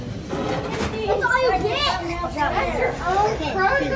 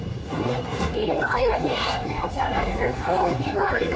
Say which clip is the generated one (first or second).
second